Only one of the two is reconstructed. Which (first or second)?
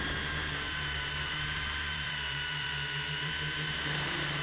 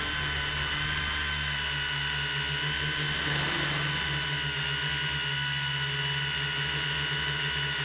first